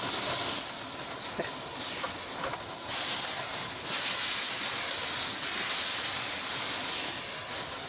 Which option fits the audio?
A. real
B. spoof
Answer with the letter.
A